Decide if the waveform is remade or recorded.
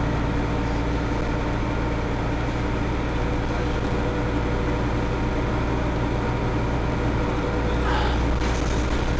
recorded